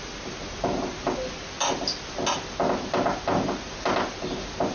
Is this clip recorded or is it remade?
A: recorded